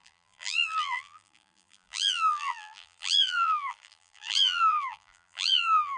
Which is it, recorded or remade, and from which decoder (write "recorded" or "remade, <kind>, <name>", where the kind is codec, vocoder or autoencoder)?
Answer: remade, vocoder, BigVGAN v2